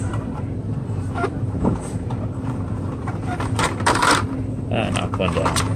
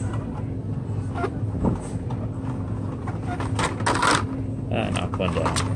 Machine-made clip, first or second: first